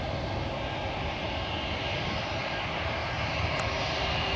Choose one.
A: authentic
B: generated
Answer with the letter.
A